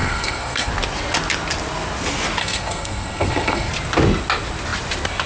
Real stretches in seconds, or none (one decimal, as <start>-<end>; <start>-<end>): 0.7-2.4; 3.7-5.3